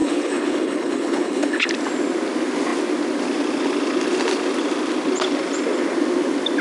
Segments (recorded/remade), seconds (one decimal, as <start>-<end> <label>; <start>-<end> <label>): 0.0-1.7 remade; 1.7-6.6 recorded